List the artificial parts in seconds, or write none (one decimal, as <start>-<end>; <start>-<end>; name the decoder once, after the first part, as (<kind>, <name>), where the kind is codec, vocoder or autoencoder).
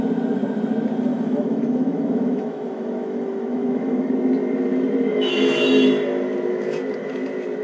1.1-4.1 (autoencoder, DAC-VAE); 5.1-5.7